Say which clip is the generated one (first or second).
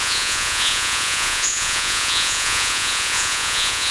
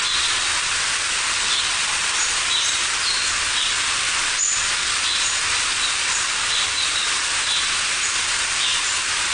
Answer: first